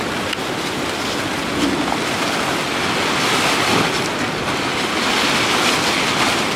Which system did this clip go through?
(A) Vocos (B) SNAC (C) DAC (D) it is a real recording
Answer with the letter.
D